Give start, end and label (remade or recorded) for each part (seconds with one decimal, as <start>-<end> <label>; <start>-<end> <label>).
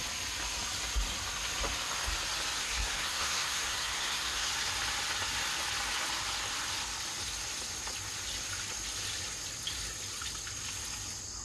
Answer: 0.0-2.6 recorded; 2.6-4.5 remade; 4.5-11.4 recorded